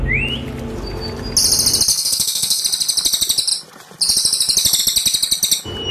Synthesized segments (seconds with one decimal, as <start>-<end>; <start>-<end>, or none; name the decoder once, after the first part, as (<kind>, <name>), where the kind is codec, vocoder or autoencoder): 1.9-2.6 (codec, SNAC)